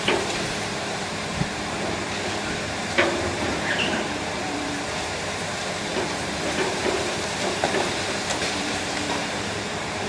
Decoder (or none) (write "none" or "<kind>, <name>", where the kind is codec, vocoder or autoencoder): vocoder, BigVGAN v2